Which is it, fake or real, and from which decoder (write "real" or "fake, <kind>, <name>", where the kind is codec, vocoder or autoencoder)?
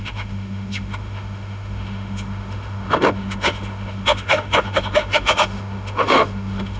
fake, autoencoder, DAC-VAE